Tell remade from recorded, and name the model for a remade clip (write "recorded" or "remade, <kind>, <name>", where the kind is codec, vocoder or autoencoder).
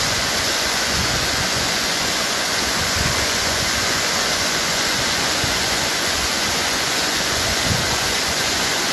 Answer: remade, vocoder, Vocos